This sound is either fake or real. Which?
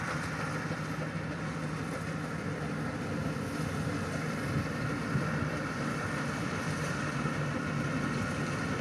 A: real